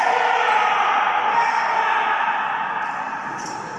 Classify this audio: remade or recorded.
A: recorded